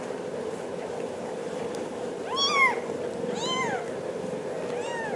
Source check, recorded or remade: recorded